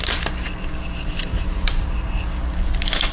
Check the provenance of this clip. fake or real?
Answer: fake